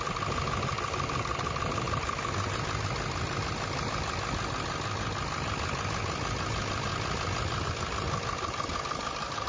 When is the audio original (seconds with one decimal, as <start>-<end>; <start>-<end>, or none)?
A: 0.0-9.5